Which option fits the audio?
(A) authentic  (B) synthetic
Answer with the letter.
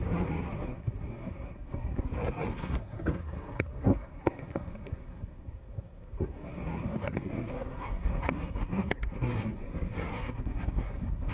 B